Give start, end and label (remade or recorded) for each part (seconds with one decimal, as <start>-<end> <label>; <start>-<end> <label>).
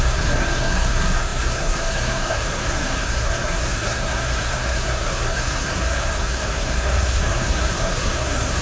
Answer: 0.0-8.6 remade